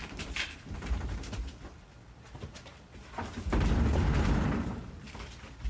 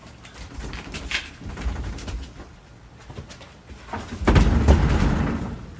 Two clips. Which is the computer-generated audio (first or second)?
first